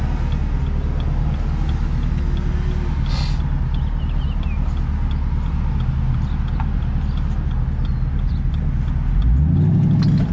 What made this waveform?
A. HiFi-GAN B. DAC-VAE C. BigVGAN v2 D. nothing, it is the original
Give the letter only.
D